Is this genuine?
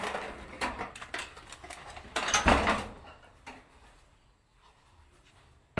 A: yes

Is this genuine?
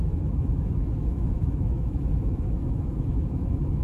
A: no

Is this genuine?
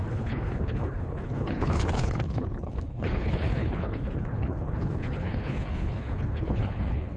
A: no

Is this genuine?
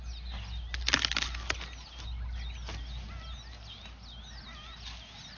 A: yes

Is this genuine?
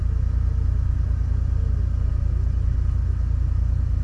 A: yes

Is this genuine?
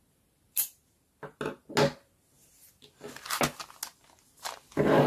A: yes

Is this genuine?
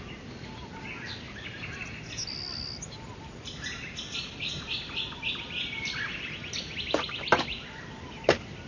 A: yes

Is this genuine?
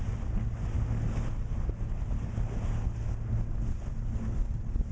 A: yes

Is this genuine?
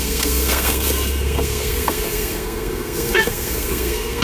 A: no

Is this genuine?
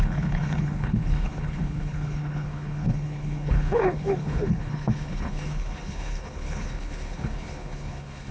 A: no